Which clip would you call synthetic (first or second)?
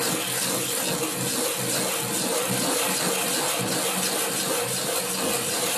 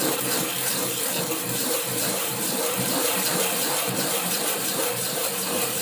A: second